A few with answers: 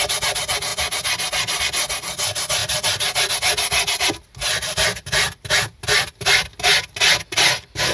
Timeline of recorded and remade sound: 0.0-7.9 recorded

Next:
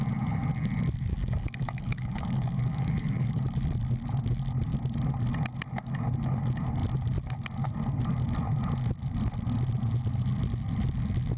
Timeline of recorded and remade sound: 0.0-1.1 recorded; 1.1-3.4 remade; 3.4-11.4 recorded